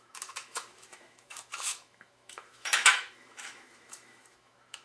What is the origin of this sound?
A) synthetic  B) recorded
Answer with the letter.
A